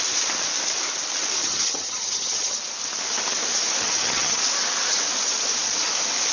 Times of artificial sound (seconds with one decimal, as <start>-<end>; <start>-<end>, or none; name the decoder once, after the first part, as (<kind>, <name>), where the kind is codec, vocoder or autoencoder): 1.4-2.6 (vocoder, HiFi-GAN); 3.8-4.4